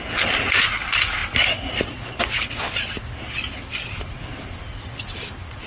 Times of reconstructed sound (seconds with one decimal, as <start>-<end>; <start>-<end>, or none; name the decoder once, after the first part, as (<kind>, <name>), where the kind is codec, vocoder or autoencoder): none